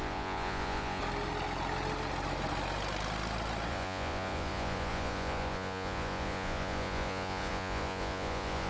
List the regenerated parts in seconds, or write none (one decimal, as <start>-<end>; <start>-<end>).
0.0-1.0; 3.7-8.7